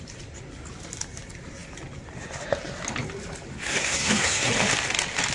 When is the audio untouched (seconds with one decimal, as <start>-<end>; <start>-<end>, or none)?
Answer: 0.0-3.6; 4.5-5.3